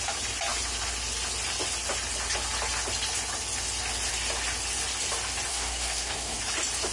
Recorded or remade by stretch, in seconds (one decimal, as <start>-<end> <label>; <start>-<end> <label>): 0.0-5.5 recorded; 5.5-6.4 remade; 6.4-6.9 recorded